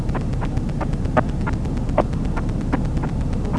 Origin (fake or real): real